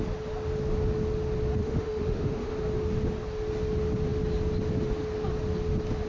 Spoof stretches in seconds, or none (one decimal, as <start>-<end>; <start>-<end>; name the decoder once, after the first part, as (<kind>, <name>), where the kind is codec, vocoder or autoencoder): 1.6-2.5 (autoencoder, DAC-VAE)